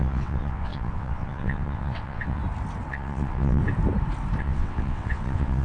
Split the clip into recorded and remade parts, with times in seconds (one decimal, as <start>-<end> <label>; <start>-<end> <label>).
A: 0.0-2.4 remade; 2.4-2.9 recorded; 2.9-3.6 remade; 3.6-4.4 recorded; 4.4-5.6 remade